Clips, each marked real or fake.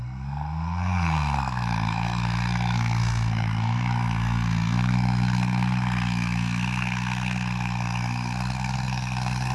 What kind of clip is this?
fake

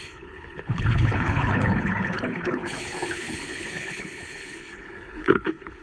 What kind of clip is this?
fake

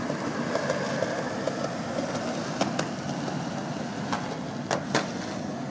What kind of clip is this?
real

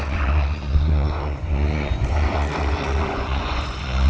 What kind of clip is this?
fake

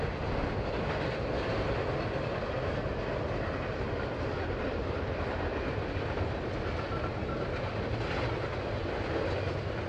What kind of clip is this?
real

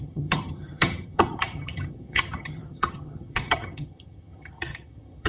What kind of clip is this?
fake